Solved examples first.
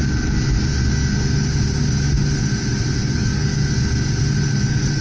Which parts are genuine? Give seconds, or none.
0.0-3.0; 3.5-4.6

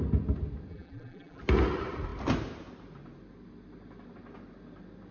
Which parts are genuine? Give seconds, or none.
0.0-0.7; 1.4-5.1